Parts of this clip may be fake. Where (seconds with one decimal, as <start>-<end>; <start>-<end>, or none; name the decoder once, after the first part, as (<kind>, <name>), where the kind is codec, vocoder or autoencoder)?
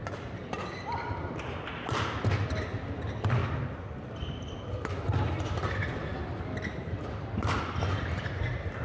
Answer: none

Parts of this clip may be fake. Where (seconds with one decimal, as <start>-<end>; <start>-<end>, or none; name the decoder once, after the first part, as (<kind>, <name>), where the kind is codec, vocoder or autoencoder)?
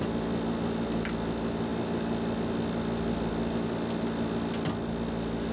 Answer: none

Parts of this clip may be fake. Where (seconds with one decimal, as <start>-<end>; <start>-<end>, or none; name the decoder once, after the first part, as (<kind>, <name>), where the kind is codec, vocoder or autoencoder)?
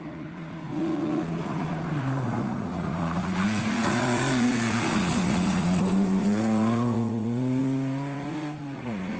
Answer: 0.0-9.2 (vocoder, Vocos)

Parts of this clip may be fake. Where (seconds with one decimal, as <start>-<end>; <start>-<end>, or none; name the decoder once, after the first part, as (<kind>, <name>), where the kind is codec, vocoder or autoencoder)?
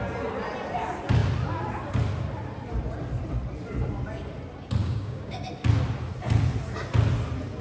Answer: 4.8-5.4 (codec, DAC)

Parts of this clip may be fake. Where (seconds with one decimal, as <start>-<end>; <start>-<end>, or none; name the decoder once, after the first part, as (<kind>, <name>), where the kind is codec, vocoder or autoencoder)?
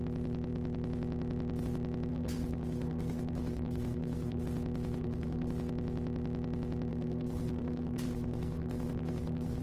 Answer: 2.1-4.4 (codec, SNAC); 5.0-5.5; 6.9-9.6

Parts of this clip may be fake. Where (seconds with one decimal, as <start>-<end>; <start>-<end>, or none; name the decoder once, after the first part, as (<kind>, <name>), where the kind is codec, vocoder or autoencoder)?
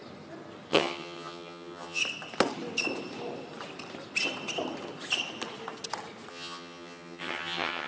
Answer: 0.7-2.0 (vocoder, HiFi-GAN); 6.3-7.9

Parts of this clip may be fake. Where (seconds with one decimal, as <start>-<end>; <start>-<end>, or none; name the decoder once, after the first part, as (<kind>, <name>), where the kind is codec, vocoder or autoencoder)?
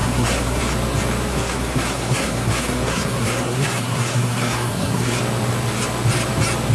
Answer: 0.0-0.6 (codec, SNAC); 1.3-5.2